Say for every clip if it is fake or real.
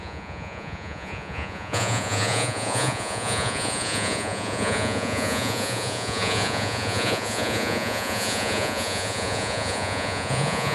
fake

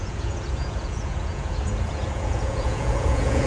fake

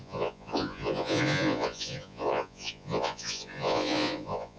fake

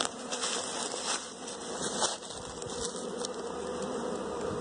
real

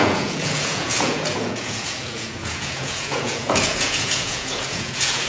fake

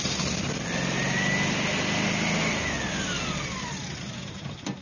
real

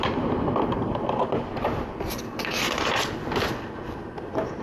real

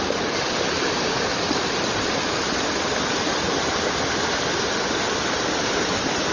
real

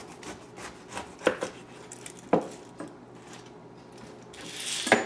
real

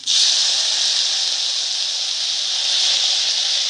real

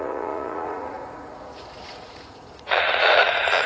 fake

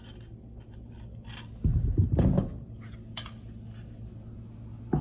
real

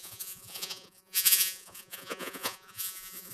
fake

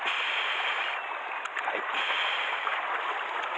real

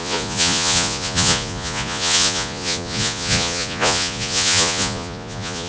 fake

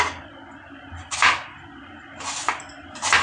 real